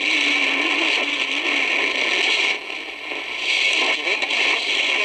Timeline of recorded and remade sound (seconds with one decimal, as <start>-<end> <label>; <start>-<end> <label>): 0.0-5.0 recorded